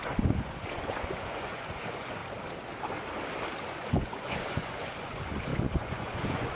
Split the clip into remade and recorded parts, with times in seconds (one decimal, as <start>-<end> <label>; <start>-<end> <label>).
0.0-2.2 remade; 2.2-3.7 recorded; 3.7-6.6 remade